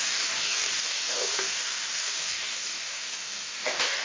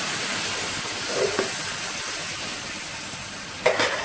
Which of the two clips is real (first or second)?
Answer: second